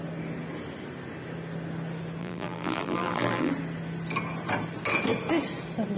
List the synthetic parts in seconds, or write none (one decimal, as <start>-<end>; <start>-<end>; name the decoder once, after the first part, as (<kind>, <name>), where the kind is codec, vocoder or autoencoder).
2.2-3.5 (vocoder, BigVGAN v2)